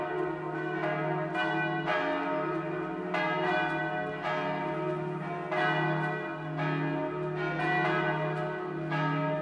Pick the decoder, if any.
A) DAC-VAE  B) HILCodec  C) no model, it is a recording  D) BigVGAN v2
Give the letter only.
C